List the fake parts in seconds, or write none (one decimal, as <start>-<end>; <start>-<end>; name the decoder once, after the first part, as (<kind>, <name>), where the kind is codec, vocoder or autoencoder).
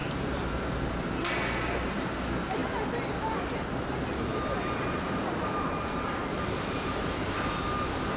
4.3-7.5 (vocoder, BigVGAN v2)